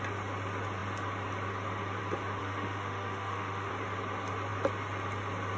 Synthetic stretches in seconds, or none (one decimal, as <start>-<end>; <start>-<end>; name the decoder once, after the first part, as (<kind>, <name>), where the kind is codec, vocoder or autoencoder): 2.4-3.7 (autoencoder, DAC-VAE)